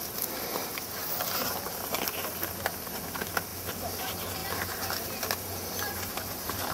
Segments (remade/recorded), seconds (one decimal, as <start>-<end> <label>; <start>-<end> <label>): 0.0-6.7 recorded

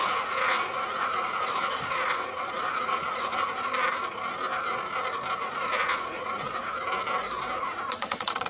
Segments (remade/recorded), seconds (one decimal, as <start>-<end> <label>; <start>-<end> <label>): 0.0-3.7 remade; 3.7-5.4 recorded; 5.4-6.6 remade; 6.6-7.6 recorded; 7.6-8.5 remade